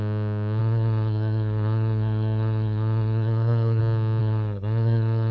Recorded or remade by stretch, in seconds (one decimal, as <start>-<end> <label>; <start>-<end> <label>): 0.0-0.6 recorded; 0.6-3.8 remade; 3.8-4.2 recorded; 4.2-5.3 remade